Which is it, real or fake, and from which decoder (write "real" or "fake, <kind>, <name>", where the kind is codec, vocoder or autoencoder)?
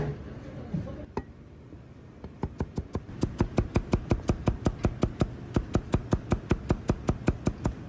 real